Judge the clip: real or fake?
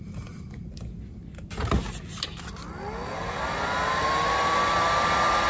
real